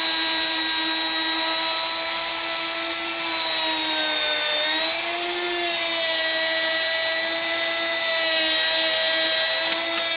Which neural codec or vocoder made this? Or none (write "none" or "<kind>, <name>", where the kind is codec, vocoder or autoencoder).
none